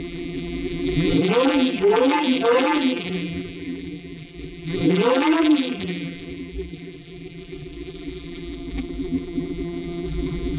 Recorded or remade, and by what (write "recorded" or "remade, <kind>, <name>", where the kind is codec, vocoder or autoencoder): remade, vocoder, BigVGAN v2